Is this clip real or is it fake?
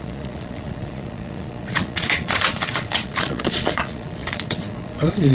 fake